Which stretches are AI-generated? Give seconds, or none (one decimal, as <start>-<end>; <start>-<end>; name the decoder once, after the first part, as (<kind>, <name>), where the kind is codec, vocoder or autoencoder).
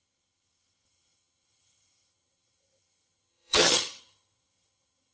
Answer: 0.0-5.1 (vocoder, HiFi-GAN)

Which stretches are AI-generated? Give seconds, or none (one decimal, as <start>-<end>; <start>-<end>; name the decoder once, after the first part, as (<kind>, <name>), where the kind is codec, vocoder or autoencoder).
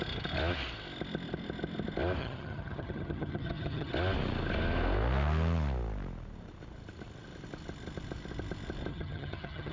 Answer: 2.2-3.9 (vocoder, HiFi-GAN); 8.9-9.7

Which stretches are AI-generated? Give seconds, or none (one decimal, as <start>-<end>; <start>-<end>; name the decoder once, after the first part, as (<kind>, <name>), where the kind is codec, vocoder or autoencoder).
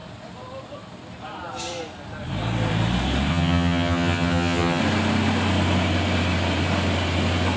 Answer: 3.3-4.8 (vocoder, HiFi-GAN)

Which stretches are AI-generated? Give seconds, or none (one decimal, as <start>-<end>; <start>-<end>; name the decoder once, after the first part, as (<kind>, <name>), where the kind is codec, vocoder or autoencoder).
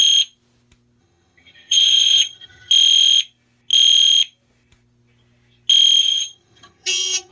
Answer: 1.0-2.7 (vocoder, HiFi-GAN); 6.0-7.3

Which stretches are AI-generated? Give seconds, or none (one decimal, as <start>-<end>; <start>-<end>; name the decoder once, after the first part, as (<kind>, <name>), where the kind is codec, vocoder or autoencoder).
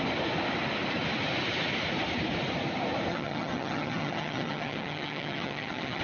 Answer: 3.1-6.0 (vocoder, HiFi-GAN)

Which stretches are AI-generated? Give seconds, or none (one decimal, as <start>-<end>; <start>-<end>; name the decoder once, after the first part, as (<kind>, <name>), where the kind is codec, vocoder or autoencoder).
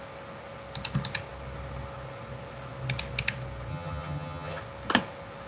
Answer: 3.7-4.6 (vocoder, HiFi-GAN)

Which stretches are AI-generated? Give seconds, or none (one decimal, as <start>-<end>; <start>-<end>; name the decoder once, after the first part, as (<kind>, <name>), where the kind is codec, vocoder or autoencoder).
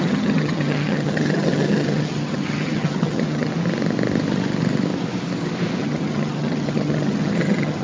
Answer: 0.0-3.5 (vocoder, HiFi-GAN); 5.8-7.8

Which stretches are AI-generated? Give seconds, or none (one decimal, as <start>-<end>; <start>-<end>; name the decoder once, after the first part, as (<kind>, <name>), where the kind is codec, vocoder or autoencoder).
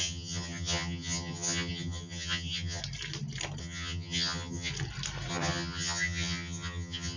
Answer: 0.0-2.8 (vocoder, HiFi-GAN); 3.6-4.7; 5.3-7.2